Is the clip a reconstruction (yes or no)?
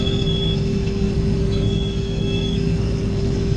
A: yes